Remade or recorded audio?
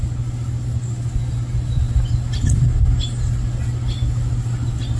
recorded